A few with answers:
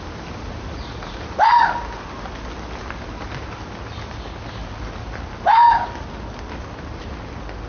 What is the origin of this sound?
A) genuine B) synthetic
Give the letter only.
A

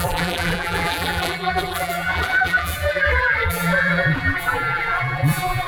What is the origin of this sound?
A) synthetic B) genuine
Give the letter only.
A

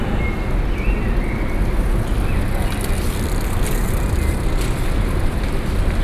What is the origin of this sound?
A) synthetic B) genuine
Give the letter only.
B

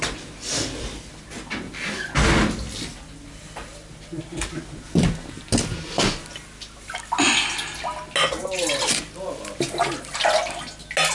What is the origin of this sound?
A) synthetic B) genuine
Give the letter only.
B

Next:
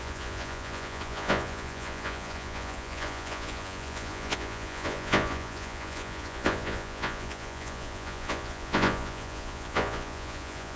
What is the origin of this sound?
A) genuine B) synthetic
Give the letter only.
B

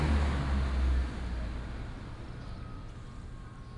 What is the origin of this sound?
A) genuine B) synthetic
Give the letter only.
A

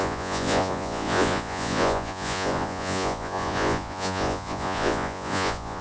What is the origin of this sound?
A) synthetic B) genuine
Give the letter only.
A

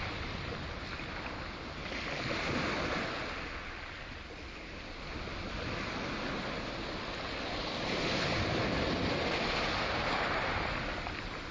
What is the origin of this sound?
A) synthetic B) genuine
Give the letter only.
B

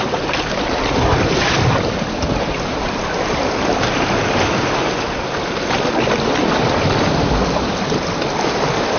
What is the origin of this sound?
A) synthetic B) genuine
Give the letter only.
B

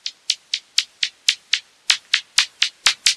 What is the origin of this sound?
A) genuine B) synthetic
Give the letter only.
A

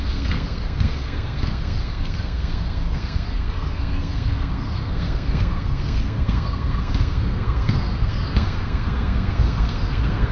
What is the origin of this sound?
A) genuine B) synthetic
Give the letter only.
B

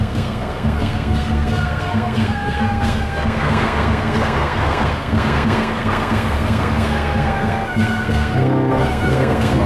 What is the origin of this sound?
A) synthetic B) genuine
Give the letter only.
A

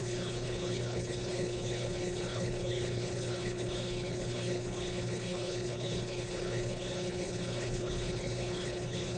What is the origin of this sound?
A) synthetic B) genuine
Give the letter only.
A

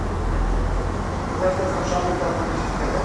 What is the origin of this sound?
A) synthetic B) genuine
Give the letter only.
B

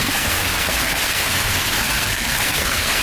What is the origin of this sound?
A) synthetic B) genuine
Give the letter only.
A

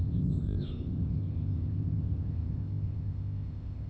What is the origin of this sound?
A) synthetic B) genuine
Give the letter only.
A